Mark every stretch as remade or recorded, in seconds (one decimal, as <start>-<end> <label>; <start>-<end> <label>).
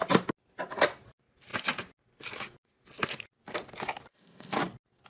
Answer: 0.0-4.1 recorded; 4.1-4.6 remade; 4.6-5.1 recorded